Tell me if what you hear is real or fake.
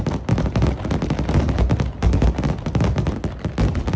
real